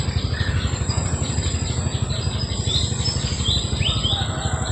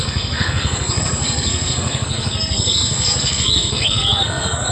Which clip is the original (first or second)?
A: first